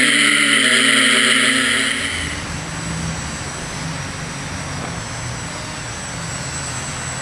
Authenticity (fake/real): real